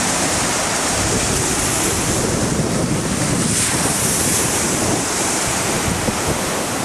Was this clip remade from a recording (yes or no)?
yes